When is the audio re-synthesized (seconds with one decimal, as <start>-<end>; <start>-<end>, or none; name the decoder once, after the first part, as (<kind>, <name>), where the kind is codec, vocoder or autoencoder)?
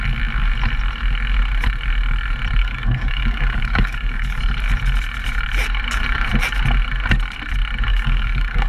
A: 2.6-4.4 (codec, DAC); 7.9-8.7